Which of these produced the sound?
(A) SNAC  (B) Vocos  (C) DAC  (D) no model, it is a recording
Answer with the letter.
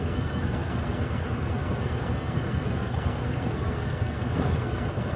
A